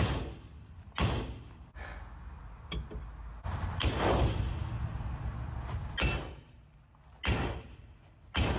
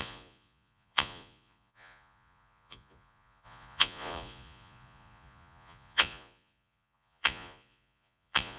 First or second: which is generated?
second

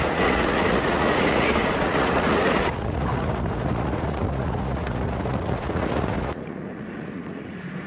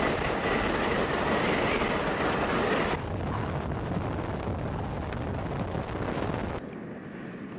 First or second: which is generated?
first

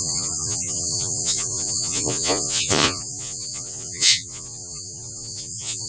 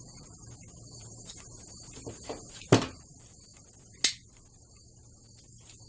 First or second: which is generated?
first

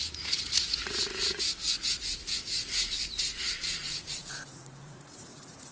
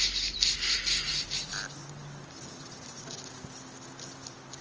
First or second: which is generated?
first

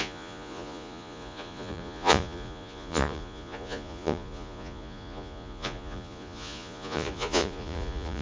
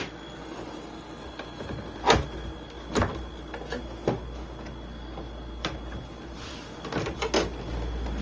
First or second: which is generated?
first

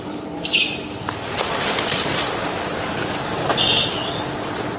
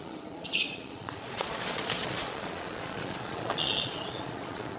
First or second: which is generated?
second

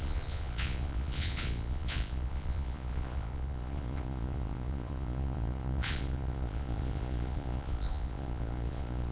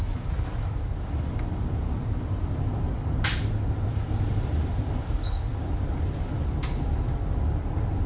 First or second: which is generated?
first